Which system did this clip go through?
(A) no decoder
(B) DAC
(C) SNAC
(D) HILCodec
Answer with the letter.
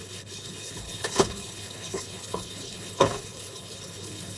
D